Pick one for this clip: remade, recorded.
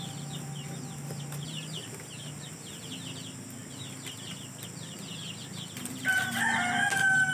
recorded